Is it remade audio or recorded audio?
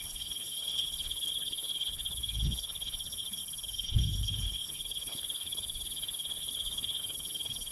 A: remade